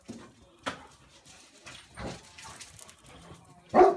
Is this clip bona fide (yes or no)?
yes